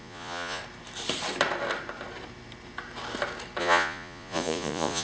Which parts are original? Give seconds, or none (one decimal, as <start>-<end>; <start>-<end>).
0.6-3.6